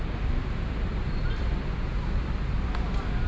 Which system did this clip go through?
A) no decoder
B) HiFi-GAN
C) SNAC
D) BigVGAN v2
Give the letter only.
D